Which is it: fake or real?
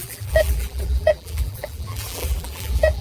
fake